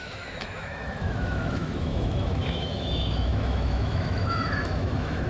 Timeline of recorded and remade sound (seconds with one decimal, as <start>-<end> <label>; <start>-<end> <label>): 0.0-5.3 remade